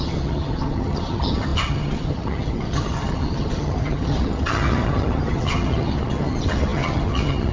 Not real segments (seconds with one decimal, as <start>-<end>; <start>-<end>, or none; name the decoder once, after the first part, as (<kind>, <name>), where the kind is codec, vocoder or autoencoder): 0.0-7.5 (vocoder, HiFi-GAN)